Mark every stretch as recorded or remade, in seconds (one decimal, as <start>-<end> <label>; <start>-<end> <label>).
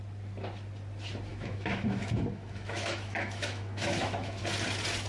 0.0-1.3 recorded; 1.3-4.4 remade; 4.4-5.1 recorded